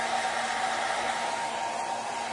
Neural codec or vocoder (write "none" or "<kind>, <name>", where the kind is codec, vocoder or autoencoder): none